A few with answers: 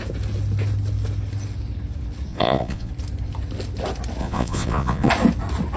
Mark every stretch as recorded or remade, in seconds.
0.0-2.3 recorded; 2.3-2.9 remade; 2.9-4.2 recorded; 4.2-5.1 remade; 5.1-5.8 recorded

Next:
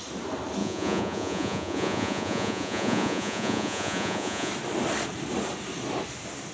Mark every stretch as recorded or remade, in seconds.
0.0-0.6 recorded; 0.6-4.5 remade; 4.5-6.5 recorded

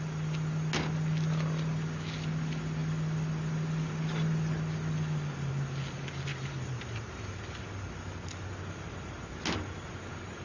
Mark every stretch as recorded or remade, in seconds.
0.0-6.3 recorded; 6.3-7.4 remade; 7.4-10.4 recorded

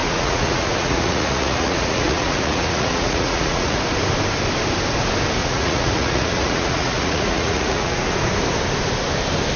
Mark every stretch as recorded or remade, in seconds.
0.0-3.8 remade; 3.8-5.4 recorded; 5.4-8.1 remade; 8.1-9.6 recorded

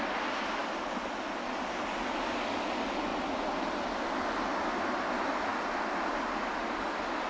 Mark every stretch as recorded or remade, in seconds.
0.0-7.3 recorded